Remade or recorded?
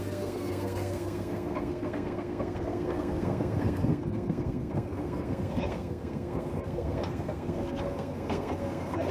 remade